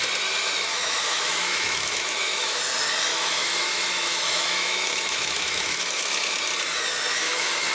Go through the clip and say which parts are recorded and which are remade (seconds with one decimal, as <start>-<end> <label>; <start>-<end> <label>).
0.0-0.7 recorded; 0.7-2.6 remade; 2.6-3.1 recorded; 3.1-6.4 remade; 6.4-7.1 recorded; 7.1-7.7 remade